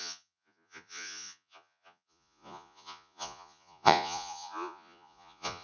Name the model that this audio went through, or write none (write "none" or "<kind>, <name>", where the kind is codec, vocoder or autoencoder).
vocoder, Vocos